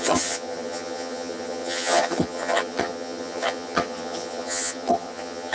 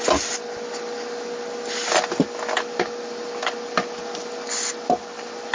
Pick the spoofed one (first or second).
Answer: first